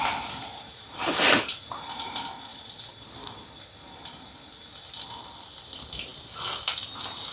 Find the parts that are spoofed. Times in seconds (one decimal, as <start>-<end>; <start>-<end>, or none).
none